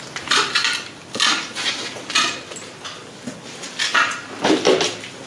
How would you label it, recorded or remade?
recorded